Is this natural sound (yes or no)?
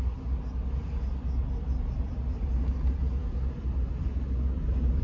yes